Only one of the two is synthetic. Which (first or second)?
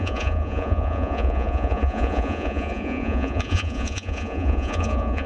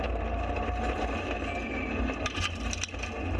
first